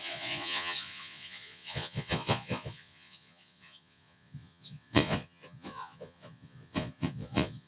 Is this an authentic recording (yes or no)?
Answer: no